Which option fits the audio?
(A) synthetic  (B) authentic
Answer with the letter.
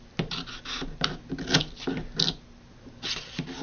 B